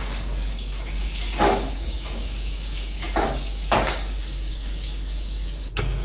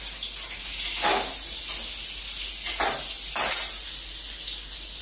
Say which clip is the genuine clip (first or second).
second